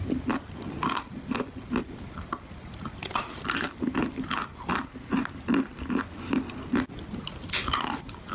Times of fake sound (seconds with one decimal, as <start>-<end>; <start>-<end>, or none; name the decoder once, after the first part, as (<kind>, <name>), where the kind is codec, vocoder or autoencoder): none